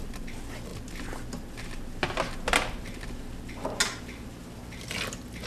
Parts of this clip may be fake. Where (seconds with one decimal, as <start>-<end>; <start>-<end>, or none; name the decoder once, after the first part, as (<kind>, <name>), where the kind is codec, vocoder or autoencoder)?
none